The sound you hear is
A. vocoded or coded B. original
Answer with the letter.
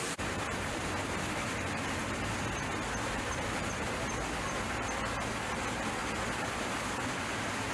B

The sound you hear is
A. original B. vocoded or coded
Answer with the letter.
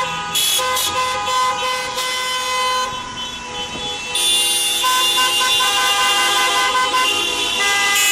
A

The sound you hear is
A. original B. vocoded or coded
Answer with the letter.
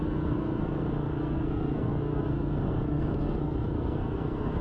B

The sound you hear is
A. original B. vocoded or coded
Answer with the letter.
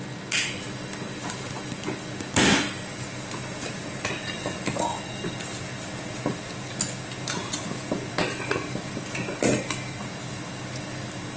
A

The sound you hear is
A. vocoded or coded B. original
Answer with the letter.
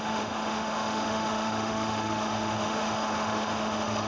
A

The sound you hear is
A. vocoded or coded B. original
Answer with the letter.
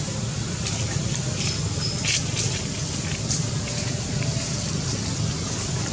B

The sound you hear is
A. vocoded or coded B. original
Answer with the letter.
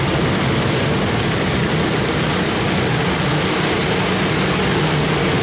B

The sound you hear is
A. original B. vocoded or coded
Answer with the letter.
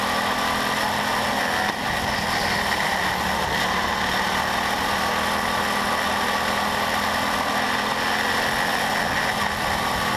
A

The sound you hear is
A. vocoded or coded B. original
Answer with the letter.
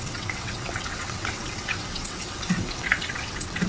A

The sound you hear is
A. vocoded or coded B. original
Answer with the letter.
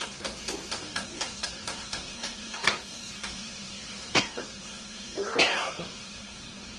A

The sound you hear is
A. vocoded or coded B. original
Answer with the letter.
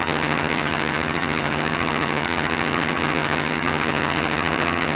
A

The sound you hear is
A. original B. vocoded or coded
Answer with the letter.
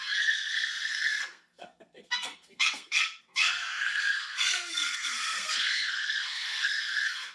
B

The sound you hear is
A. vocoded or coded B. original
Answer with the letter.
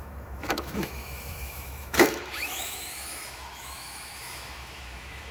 A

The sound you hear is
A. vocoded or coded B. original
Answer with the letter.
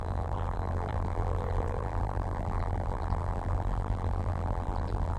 A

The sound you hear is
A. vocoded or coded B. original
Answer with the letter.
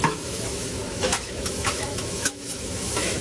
A